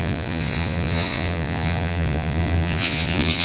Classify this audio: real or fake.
fake